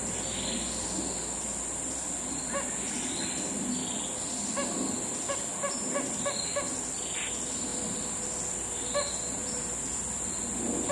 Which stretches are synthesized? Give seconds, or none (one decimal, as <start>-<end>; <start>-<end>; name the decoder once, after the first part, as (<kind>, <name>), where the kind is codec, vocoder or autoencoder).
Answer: none